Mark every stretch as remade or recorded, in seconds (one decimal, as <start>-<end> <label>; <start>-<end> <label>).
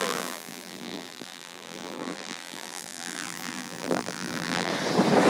0.0-4.7 remade; 4.7-5.3 recorded